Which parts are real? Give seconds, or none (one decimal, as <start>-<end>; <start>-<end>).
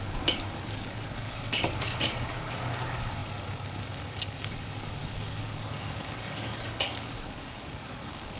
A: none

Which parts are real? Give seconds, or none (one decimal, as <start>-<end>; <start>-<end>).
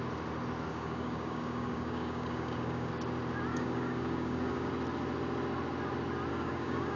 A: 0.0-0.7; 2.9-3.5; 4.7-6.3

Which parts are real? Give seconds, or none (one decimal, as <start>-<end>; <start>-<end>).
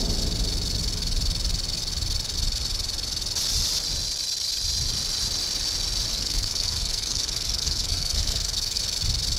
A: 0.0-6.1; 8.8-9.4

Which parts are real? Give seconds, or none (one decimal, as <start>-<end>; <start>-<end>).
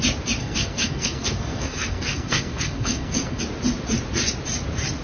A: 0.0-0.4; 3.4-5.0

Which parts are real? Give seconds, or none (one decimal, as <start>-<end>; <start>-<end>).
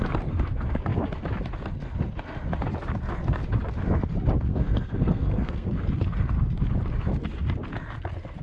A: 0.0-4.5; 5.7-8.4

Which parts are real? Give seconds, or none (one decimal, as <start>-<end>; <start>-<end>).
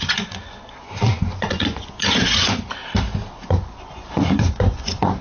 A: 2.8-3.4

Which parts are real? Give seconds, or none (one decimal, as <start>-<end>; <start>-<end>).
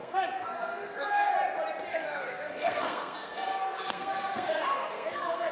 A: 1.3-1.9